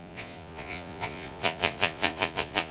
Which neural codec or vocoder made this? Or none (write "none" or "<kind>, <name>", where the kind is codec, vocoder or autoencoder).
vocoder, Vocos